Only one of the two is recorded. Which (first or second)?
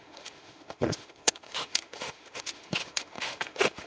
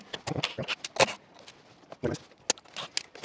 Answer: second